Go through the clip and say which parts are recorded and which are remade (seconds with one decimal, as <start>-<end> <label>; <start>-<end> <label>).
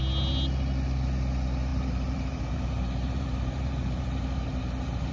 0.0-1.7 recorded; 1.7-5.1 remade